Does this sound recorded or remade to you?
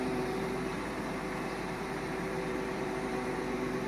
remade